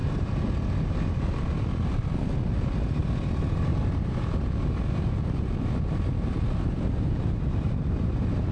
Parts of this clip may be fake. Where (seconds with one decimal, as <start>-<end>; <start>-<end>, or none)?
none